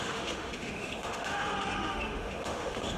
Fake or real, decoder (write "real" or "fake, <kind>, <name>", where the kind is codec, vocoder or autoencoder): fake, autoencoder, DAC-VAE